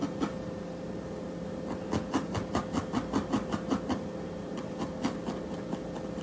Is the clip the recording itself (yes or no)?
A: yes